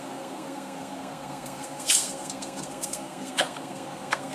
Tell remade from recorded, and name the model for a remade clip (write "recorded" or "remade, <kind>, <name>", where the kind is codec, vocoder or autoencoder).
remade, codec, SNAC